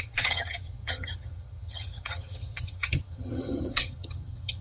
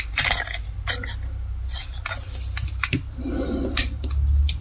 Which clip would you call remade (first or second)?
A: first